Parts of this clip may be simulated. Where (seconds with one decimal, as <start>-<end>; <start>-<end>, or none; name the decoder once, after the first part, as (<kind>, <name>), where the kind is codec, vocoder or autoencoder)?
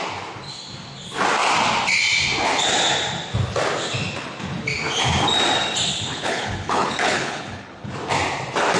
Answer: 5.9-7.9 (codec, HILCodec)